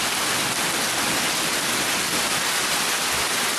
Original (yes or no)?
yes